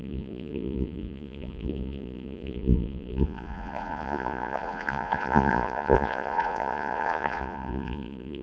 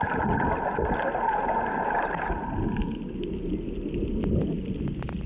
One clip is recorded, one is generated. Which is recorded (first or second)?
second